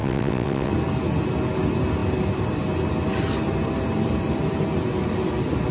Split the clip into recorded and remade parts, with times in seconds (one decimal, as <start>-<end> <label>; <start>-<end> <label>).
0.0-0.7 remade; 0.7-5.7 recorded